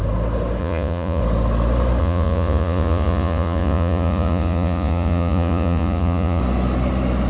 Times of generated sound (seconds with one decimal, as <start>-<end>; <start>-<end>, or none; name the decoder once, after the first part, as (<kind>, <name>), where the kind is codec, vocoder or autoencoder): 0.6-1.2 (vocoder, Vocos); 2.0-6.4